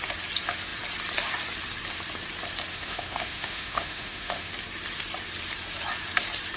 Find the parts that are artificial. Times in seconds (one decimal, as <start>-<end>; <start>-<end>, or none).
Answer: 2.7-4.5